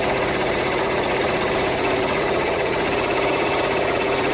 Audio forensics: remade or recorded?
remade